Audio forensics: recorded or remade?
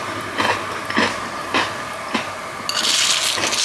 recorded